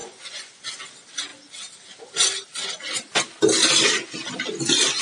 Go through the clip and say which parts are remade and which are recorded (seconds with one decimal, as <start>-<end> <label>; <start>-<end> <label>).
0.0-0.8 remade; 0.8-5.0 recorded